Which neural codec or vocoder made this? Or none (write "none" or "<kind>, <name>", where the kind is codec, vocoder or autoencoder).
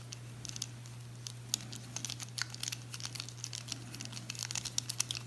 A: none